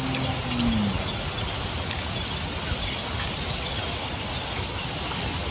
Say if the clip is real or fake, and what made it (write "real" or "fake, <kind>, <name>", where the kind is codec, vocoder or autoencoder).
real